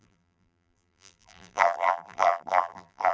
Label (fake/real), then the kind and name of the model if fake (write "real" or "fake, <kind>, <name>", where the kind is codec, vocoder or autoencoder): fake, vocoder, BigVGAN v2